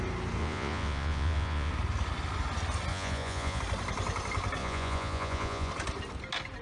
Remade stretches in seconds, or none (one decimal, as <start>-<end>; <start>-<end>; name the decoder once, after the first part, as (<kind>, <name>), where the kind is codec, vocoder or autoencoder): 0.4-1.7 (vocoder, Vocos); 2.9-3.6; 4.6-5.7